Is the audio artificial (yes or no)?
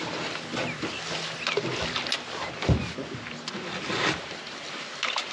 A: no